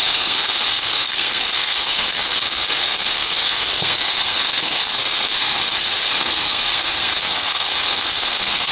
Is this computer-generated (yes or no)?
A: yes